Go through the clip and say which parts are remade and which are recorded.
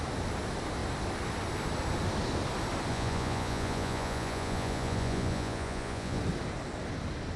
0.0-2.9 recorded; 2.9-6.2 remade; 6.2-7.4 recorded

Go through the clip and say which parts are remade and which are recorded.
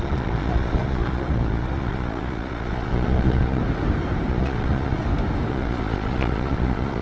0.0-3.6 remade; 3.6-4.3 recorded; 4.3-5.0 remade; 5.0-5.5 recorded; 5.5-7.0 remade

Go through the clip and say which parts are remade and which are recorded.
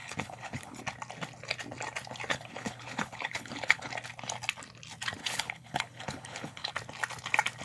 0.0-0.8 remade; 0.8-2.3 recorded; 2.3-3.9 remade; 3.9-5.2 recorded; 5.2-6.7 remade; 6.7-7.6 recorded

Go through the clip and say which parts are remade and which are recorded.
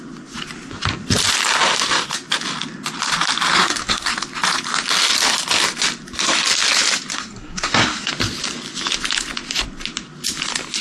0.0-3.5 recorded; 3.5-4.1 remade; 4.1-7.1 recorded; 7.1-8.1 remade; 8.1-10.8 recorded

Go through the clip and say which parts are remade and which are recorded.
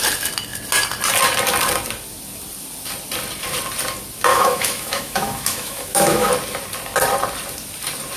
0.0-4.3 recorded; 4.3-6.3 remade; 6.3-8.2 recorded